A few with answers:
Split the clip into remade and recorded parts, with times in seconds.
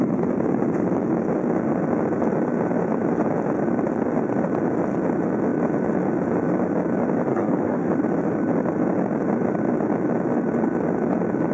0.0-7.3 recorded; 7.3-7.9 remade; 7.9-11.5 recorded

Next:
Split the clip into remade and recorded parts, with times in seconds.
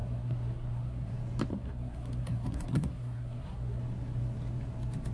0.0-1.1 remade; 1.1-1.5 recorded; 1.5-3.8 remade; 3.8-5.1 recorded